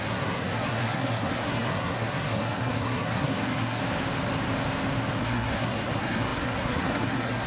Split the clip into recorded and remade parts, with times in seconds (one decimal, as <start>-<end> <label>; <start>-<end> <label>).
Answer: 0.0-3.8 remade; 3.8-5.2 recorded; 5.2-7.5 remade